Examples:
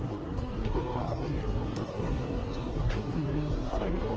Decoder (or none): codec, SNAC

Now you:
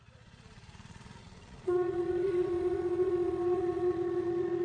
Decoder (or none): vocoder, Vocos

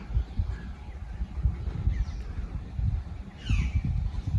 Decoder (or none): none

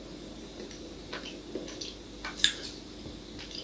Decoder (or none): none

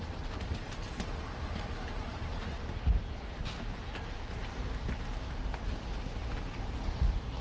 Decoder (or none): vocoder, BigVGAN v2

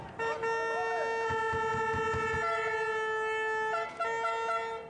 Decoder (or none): none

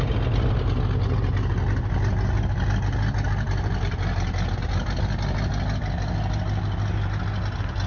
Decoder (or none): none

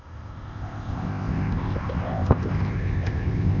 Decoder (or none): codec, ZipCodec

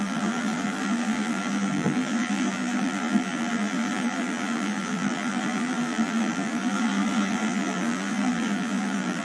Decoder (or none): vocoder, BigVGAN v2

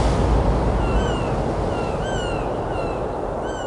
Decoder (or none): none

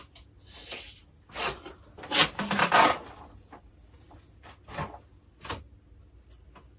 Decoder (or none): none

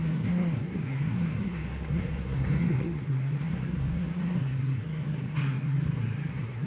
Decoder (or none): codec, SNAC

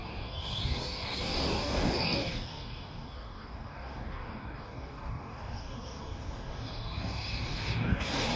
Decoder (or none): codec, DAC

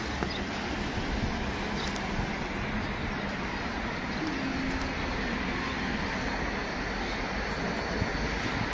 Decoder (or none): none